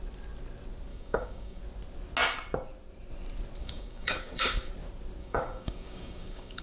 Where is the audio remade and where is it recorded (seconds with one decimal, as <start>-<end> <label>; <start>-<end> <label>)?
0.0-0.9 recorded; 0.9-1.6 remade; 1.6-3.6 recorded; 3.6-4.7 remade; 4.7-5.2 recorded; 5.2-6.6 remade